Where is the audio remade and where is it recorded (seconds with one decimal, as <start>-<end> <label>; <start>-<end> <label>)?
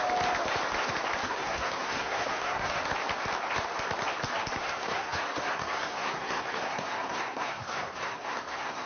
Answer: 0.0-1.2 recorded; 1.2-2.8 remade; 2.8-4.6 recorded; 4.6-8.9 remade